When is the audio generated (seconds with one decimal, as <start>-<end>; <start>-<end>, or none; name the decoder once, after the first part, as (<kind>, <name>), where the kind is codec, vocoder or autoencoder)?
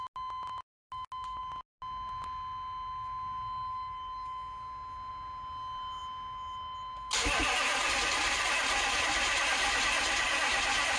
none